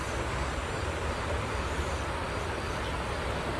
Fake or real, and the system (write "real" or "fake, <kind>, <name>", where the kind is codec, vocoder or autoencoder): real